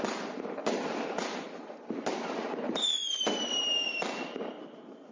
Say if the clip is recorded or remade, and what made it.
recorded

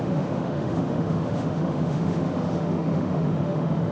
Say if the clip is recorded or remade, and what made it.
remade, autoencoder, DAC-VAE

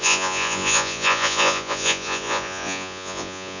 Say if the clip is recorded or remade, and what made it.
remade, vocoder, Vocos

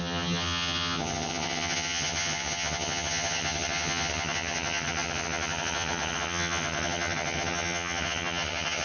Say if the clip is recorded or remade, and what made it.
remade, vocoder, HiFi-GAN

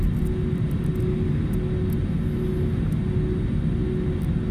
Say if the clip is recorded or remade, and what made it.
recorded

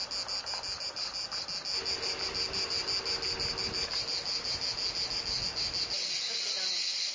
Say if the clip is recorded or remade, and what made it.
recorded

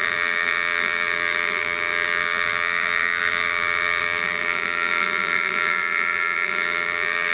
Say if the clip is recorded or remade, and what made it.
remade, vocoder, BigVGAN v2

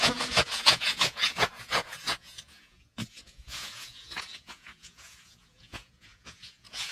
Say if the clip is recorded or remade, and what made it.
remade, vocoder, Vocos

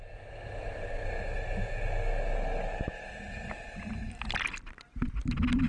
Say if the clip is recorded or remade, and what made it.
recorded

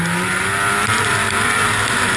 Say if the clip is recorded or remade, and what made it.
recorded